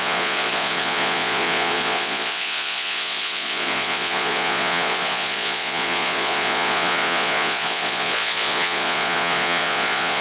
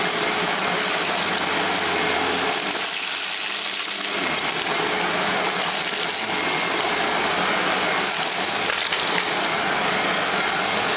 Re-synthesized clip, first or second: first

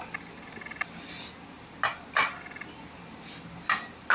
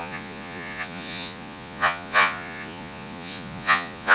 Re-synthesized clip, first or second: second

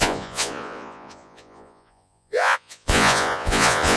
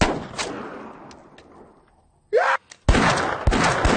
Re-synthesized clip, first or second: first